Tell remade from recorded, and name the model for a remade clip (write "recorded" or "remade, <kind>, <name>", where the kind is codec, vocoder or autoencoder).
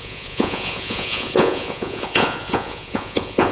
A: remade, vocoder, Vocos